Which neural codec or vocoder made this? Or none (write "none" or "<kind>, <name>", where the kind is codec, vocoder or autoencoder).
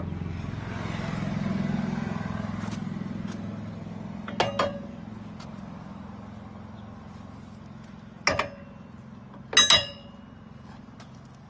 none